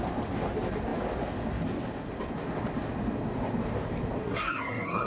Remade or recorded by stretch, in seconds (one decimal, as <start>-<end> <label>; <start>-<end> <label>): 0.0-4.2 recorded; 4.2-5.1 remade